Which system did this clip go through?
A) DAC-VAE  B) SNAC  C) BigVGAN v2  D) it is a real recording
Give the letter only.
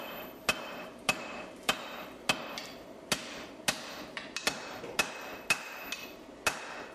D